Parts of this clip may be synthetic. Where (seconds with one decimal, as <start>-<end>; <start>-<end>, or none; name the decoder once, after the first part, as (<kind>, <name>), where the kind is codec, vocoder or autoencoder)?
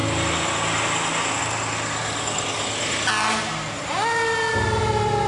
none